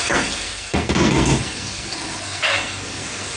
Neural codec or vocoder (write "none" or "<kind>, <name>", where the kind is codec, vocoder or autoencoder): codec, SNAC